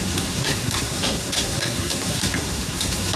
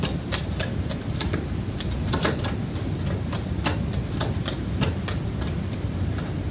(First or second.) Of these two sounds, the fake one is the first